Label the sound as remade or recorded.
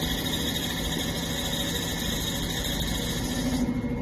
recorded